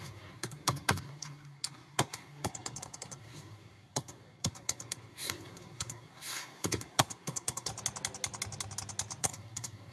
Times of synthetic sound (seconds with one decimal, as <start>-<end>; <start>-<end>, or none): 0.0-7.7; 9.2-9.9